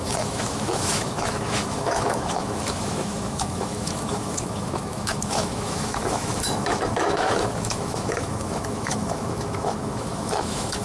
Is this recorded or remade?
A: remade